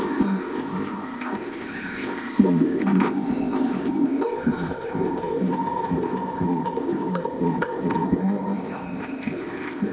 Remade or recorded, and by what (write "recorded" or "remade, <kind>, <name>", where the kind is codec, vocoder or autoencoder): remade, codec, ZipCodec